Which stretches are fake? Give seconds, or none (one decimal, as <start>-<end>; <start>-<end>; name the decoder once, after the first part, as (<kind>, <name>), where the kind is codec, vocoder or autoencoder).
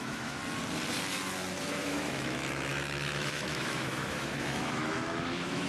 0.0-0.4 (autoencoder, DAC-VAE); 1.6-5.7